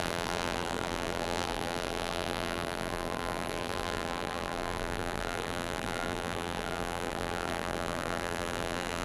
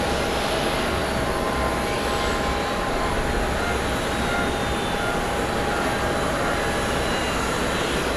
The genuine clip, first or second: second